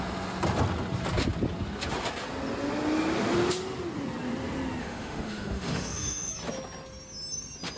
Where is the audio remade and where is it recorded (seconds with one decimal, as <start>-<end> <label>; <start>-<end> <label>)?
0.0-4.8 recorded; 4.8-6.3 remade; 6.3-7.8 recorded